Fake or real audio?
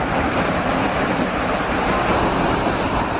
real